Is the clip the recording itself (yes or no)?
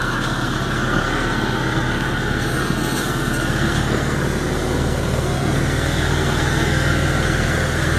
no